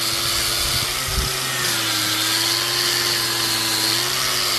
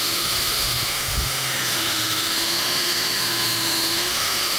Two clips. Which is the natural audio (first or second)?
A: first